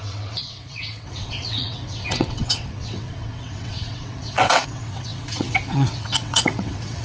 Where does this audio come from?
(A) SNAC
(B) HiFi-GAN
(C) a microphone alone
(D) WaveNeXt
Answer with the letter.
D